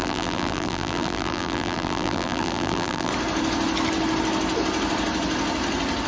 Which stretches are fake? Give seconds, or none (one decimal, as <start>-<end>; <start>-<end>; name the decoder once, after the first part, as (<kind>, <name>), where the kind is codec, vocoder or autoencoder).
0.0-3.1 (vocoder, BigVGAN v2)